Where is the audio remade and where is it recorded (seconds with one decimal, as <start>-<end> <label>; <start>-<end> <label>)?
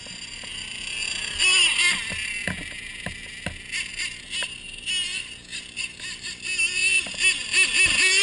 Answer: 0.0-8.2 recorded